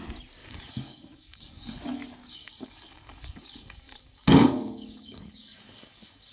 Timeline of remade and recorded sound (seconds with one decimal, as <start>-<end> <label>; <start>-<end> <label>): 0.0-0.4 recorded; 0.4-1.8 remade; 1.8-2.3 recorded; 2.3-6.3 remade